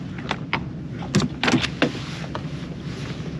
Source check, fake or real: real